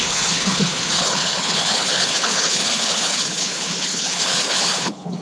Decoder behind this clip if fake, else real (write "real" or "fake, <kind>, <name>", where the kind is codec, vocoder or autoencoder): fake, codec, HILCodec